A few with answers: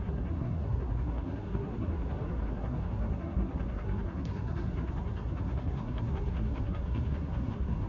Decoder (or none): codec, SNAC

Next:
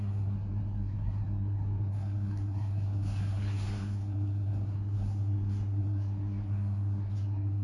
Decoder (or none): codec, SNAC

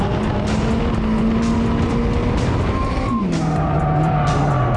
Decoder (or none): none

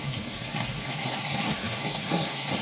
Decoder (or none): codec, SNAC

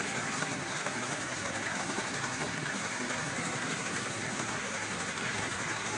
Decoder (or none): codec, SNAC